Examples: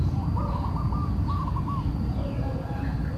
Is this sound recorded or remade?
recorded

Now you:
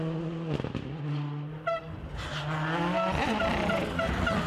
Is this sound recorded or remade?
recorded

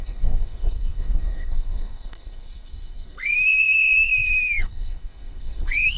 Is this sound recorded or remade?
remade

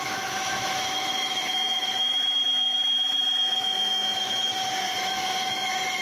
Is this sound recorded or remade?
remade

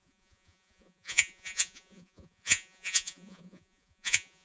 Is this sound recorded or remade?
remade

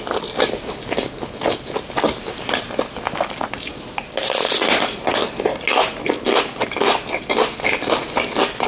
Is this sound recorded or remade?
recorded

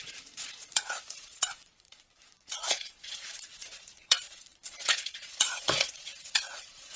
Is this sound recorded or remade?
remade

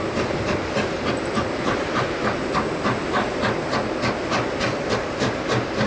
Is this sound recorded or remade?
recorded